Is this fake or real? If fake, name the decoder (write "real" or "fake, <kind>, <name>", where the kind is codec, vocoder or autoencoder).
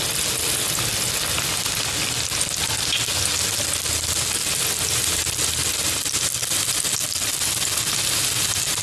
real